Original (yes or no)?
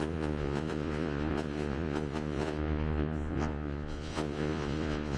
no